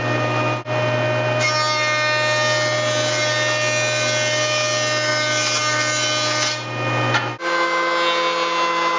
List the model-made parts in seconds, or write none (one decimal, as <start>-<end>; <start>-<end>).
none